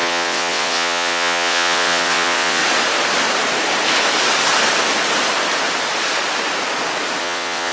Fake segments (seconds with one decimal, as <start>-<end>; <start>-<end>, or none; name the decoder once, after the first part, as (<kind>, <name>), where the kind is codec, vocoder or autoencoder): 0.0-2.6 (vocoder, WaveNeXt); 7.2-7.7